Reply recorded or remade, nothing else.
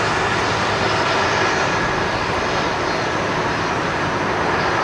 recorded